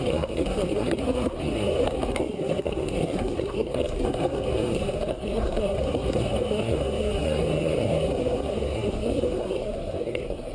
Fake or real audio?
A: fake